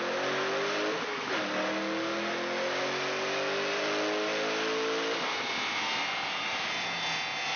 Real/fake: real